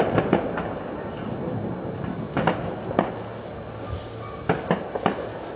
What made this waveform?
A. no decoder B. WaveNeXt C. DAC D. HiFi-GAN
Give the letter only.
A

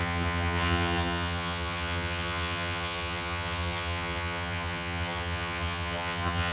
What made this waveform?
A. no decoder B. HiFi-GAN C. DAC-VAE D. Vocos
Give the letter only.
B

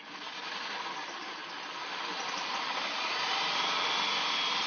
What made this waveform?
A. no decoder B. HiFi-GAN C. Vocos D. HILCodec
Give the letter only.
A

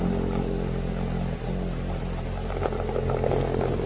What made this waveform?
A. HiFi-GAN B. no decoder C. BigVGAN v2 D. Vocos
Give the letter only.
B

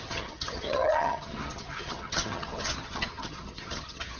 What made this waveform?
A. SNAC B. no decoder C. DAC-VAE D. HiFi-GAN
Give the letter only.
D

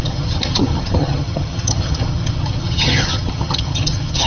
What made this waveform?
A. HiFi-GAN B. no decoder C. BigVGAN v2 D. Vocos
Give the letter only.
A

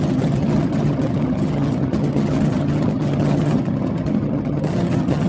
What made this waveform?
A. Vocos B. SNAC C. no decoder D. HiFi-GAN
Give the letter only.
D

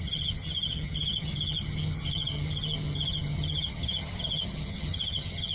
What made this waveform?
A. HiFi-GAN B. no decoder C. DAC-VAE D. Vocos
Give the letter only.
A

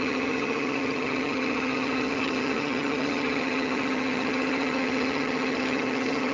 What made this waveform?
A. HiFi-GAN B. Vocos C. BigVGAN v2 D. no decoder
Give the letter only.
A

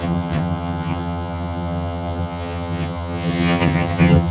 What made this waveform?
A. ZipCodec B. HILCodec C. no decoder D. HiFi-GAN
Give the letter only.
D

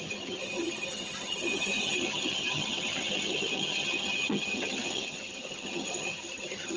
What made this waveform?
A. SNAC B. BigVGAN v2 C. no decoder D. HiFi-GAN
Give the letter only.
D